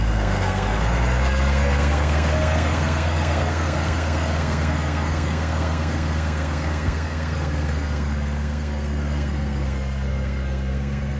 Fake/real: fake